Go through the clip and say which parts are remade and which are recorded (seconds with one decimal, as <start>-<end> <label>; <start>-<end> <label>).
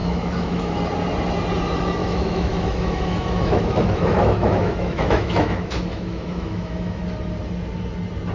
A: 0.0-0.7 remade; 0.7-2.0 recorded; 2.0-7.0 remade; 7.0-8.3 recorded